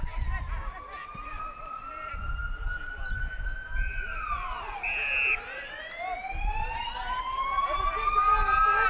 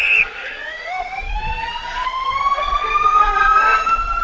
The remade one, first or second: second